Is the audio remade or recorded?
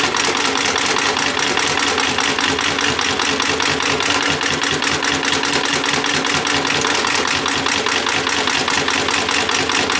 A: recorded